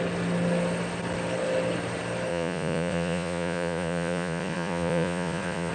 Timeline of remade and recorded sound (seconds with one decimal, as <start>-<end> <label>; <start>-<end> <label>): 0.0-2.3 recorded; 2.3-5.7 remade